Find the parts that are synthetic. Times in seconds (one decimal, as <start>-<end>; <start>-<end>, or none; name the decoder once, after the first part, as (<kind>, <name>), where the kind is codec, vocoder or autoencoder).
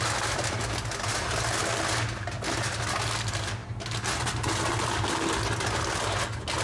none